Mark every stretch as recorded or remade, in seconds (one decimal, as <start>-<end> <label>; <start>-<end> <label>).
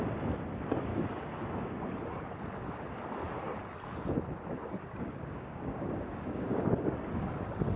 0.0-0.9 recorded; 0.9-1.8 remade; 1.8-4.6 recorded; 4.6-6.6 remade; 6.6-7.8 recorded